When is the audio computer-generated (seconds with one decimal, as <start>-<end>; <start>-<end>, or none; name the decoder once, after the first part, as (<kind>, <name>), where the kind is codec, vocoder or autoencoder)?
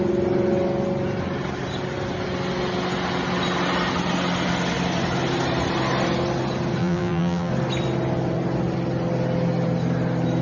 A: 6.8-7.5 (vocoder, BigVGAN v2)